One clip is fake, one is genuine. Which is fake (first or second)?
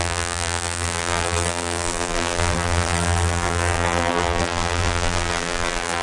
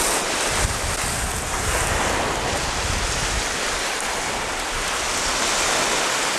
first